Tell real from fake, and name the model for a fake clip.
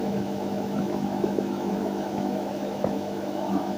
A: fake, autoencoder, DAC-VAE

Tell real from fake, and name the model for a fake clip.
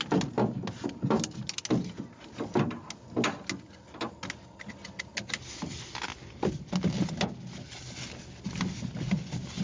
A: real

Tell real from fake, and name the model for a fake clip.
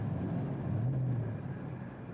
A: real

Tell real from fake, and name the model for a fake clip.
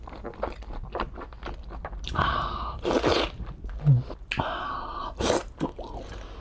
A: real